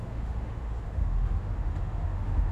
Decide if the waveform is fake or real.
fake